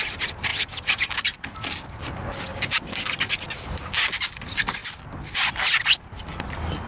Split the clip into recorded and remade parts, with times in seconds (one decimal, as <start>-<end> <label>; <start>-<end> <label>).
0.0-6.9 recorded